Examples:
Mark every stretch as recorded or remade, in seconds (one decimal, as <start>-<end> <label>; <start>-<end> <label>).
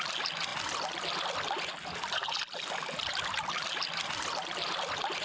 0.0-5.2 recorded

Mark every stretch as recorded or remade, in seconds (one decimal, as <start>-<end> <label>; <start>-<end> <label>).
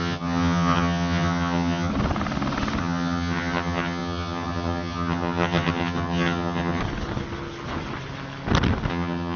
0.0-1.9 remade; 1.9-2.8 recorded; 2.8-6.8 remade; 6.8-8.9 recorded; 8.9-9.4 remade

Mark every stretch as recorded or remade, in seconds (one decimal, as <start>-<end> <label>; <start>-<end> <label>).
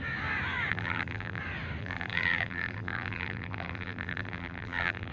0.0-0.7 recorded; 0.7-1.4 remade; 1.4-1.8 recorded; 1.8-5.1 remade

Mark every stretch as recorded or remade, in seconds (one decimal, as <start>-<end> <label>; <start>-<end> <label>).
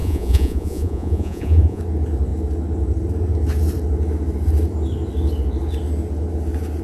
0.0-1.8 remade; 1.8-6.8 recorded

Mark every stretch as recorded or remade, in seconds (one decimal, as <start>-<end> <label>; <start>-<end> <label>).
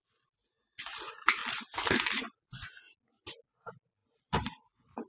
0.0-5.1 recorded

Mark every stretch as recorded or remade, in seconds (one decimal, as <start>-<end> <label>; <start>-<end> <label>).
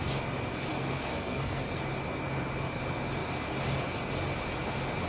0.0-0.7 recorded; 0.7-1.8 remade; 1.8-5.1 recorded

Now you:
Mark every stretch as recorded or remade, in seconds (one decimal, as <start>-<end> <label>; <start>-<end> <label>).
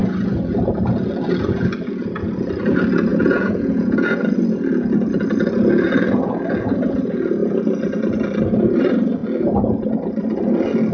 0.0-3.1 recorded; 3.1-4.2 remade; 4.2-10.9 recorded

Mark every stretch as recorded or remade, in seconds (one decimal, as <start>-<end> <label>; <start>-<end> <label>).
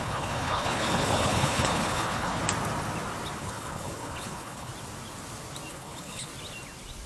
0.0-2.4 remade; 2.4-3.4 recorded; 3.4-4.7 remade; 4.7-5.7 recorded; 5.7-6.3 remade; 6.3-7.1 recorded